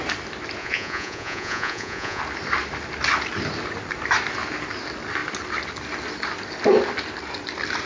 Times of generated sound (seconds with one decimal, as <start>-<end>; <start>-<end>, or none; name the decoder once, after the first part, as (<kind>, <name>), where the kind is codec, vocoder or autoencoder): 0.6-2.2 (vocoder, Vocos)